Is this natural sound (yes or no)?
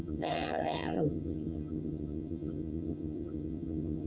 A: no